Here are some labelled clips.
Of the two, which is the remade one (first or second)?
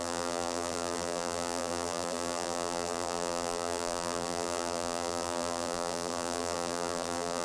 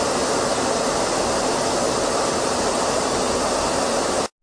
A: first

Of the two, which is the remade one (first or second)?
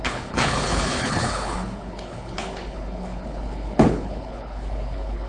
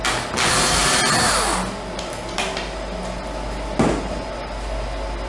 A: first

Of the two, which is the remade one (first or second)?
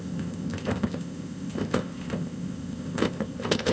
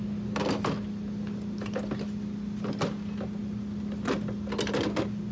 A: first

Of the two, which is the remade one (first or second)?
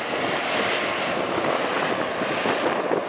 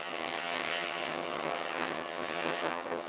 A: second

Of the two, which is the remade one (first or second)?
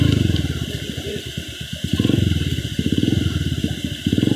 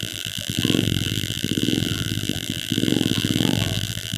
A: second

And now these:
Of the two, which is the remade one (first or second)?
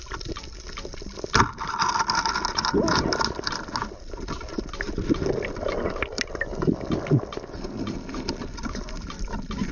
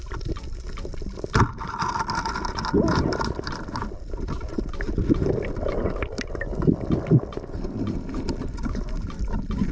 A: second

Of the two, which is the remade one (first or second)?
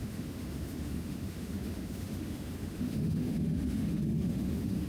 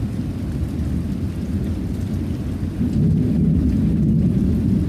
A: first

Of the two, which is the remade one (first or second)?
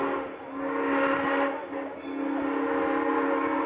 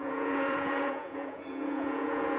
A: second